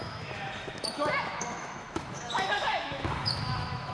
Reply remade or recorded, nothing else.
remade